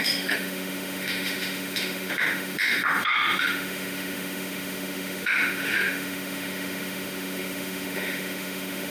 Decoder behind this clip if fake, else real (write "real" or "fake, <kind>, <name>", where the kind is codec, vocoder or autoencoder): fake, autoencoder, DAC-VAE